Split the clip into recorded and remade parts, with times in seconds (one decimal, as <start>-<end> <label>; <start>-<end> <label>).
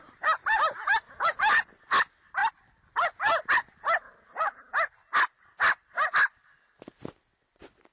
0.0-7.9 recorded